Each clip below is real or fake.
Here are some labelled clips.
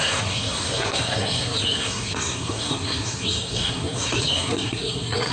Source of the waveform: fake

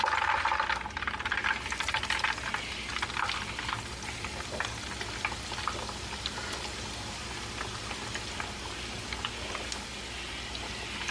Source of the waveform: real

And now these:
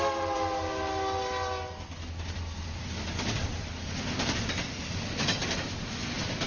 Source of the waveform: real